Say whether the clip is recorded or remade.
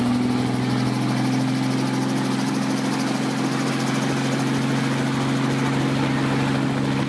recorded